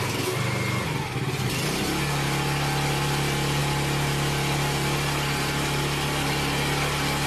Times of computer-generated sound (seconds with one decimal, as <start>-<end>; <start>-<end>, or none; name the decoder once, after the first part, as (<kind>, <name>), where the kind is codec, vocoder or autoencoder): none